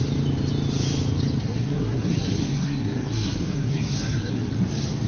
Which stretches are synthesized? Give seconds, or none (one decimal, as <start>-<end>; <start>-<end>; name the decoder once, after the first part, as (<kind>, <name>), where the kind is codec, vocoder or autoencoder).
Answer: 1.4-4.5 (codec, SNAC)